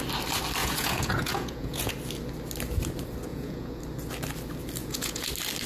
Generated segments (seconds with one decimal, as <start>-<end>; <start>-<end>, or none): 0.6-1.9; 3.3-3.8; 4.8-5.3